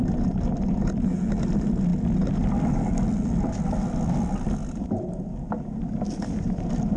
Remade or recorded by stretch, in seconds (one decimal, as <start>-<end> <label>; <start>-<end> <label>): 0.0-7.0 recorded